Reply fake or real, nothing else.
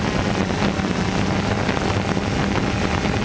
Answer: real